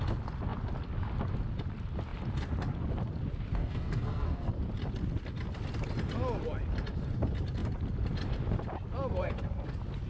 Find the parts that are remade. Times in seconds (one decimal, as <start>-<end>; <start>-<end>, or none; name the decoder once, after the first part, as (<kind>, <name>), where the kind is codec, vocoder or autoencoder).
3.6-4.5 (codec, SNAC)